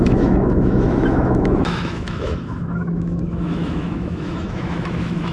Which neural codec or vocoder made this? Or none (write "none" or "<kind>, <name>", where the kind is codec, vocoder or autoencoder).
autoencoder, DAC-VAE